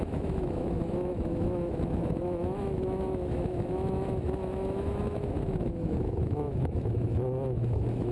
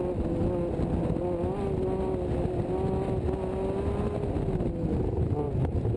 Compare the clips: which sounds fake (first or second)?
first